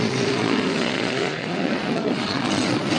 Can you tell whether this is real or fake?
fake